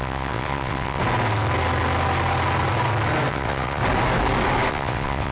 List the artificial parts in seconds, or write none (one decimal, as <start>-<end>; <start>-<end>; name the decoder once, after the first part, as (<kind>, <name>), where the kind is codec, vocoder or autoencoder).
0.0-1.0 (vocoder, WaveNeXt); 3.3-3.8; 4.7-5.3

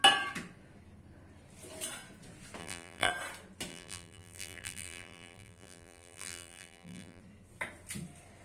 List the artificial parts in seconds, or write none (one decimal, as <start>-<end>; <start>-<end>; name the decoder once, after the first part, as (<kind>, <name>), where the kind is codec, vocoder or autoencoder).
2.6-3.1 (vocoder, BigVGAN v2); 3.7-7.2